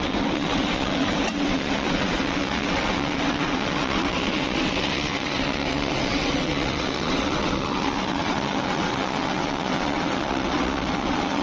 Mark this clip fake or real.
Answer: fake